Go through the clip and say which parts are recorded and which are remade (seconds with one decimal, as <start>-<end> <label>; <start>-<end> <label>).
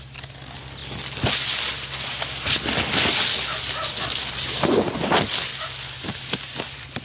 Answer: 0.0-3.5 recorded; 3.5-4.4 remade; 4.4-5.5 recorded; 5.5-6.2 remade; 6.2-7.0 recorded